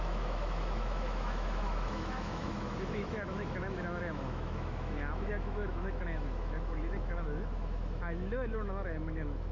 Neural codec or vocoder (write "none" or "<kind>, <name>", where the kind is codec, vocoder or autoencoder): autoencoder, DAC-VAE